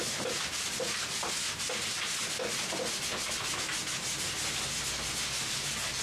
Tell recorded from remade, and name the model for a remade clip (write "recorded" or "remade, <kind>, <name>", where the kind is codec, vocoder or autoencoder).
recorded